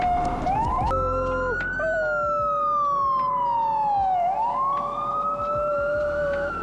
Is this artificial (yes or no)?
no